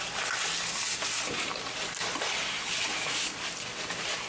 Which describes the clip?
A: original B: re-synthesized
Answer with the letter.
B